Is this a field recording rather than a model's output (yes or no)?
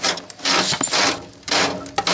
yes